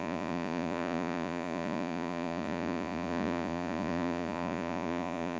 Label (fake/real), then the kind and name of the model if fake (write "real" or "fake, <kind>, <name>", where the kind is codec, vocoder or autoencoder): fake, vocoder, Vocos